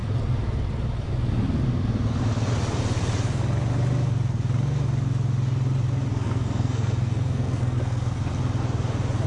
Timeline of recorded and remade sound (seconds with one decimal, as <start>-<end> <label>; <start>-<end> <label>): 0.0-6.1 recorded; 6.1-8.3 remade; 8.3-9.3 recorded